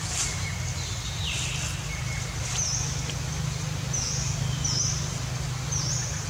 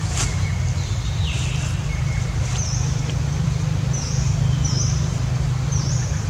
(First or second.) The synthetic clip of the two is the second